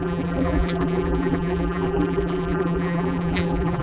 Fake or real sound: fake